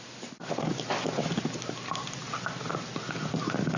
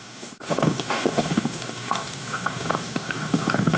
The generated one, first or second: second